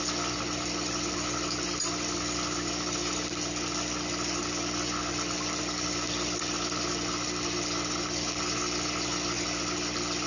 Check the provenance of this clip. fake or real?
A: fake